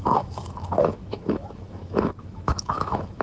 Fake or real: fake